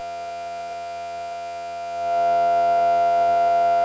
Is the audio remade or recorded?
remade